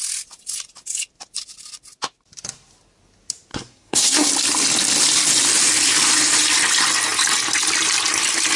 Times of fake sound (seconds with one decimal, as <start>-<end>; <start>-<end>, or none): 3.5-4.3